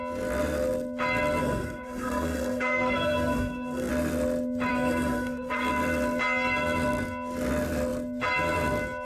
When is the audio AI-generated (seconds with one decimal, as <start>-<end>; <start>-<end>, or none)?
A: 1.4-3.9; 4.7-5.7

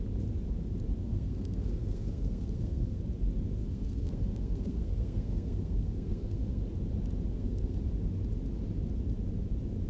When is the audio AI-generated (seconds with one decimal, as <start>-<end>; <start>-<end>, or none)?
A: 1.0-3.0; 3.6-6.6; 7.3-7.8

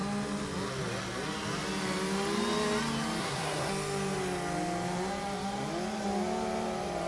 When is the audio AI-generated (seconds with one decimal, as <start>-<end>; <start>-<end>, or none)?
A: 3.2-3.7